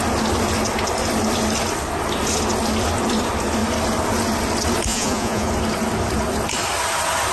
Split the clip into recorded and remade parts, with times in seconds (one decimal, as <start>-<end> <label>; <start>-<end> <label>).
0.0-4.9 recorded; 4.9-5.5 remade; 5.5-7.3 recorded